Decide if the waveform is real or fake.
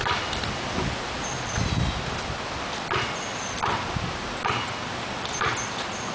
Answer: real